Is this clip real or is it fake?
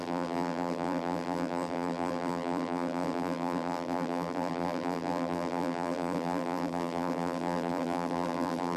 fake